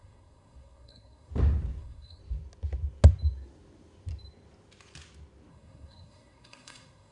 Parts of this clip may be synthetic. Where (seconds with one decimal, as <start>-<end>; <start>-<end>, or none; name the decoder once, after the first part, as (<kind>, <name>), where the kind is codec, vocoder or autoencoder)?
0.0-1.3 (codec, SNAC); 1.8-2.2; 5.5-7.1